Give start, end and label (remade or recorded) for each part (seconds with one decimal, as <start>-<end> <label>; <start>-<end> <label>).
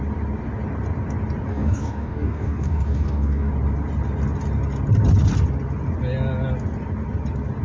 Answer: 0.0-1.5 recorded; 1.5-3.5 remade; 3.5-7.6 recorded